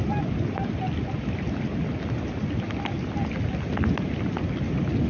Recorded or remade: recorded